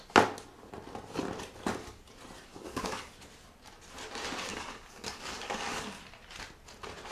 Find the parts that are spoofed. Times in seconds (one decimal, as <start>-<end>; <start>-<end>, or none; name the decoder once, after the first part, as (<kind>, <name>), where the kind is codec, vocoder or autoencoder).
2.5-3.1 (codec, DAC); 4.5-6.0